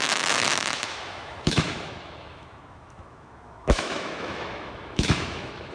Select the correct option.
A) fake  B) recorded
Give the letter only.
A